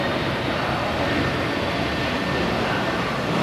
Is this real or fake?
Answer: real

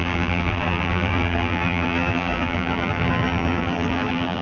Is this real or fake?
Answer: fake